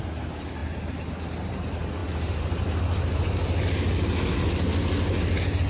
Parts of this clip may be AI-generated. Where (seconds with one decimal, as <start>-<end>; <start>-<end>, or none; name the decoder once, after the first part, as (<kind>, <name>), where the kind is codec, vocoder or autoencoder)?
none